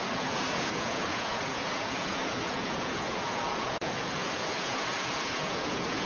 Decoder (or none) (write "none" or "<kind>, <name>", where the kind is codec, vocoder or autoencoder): vocoder, Vocos